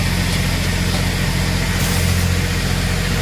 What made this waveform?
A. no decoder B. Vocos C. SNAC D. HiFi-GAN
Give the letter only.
A